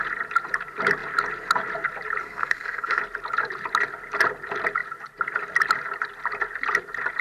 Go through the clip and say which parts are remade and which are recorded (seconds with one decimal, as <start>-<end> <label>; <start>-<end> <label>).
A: 0.0-2.2 recorded; 2.2-3.0 remade; 3.0-7.2 recorded